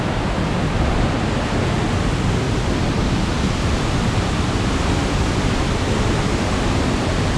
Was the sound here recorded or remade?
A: recorded